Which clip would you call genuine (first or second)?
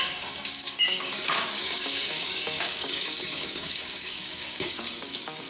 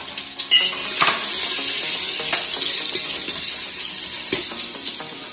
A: second